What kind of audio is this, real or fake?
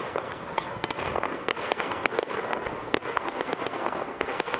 fake